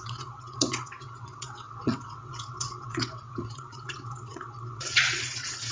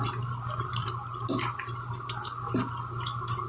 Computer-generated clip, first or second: first